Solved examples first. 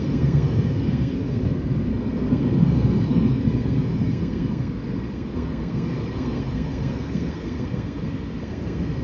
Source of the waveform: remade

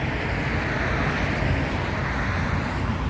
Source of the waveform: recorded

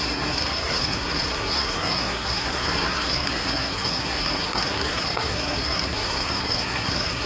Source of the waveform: remade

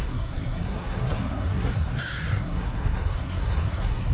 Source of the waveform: remade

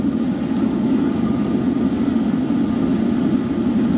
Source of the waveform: recorded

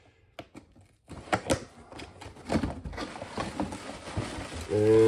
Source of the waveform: recorded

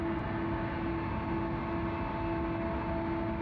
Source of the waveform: recorded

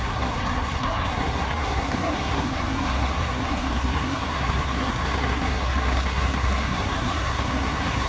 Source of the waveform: remade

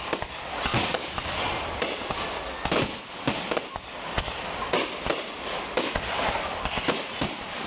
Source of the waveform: recorded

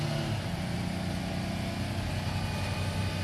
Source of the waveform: recorded